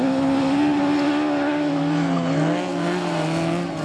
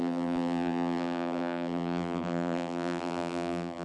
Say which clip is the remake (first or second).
second